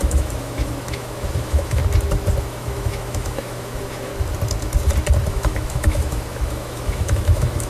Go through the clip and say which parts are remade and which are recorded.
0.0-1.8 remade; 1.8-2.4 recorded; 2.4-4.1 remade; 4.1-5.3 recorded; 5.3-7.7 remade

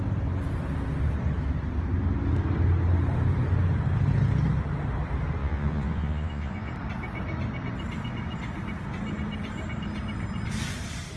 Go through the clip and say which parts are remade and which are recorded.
0.0-5.4 recorded; 5.4-6.7 remade; 6.7-11.2 recorded

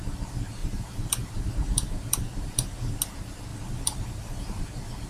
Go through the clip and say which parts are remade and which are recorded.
0.0-0.6 recorded; 0.6-3.0 remade; 3.0-3.5 recorded; 3.5-4.6 remade; 4.6-5.1 recorded

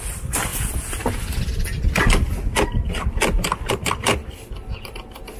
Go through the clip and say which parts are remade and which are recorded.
0.0-5.4 recorded

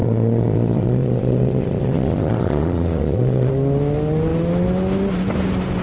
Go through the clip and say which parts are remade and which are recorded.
0.0-3.5 remade; 3.5-5.8 recorded

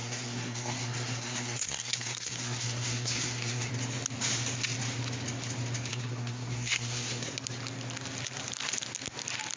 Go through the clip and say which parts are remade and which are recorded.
0.0-3.7 remade; 3.7-5.9 recorded; 5.9-7.3 remade; 7.3-9.6 recorded

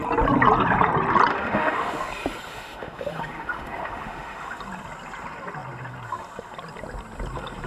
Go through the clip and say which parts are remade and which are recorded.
0.0-1.3 recorded; 1.3-2.1 remade; 2.1-2.5 recorded; 2.5-4.6 remade; 4.6-7.7 recorded